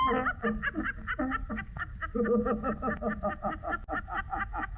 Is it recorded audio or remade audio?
recorded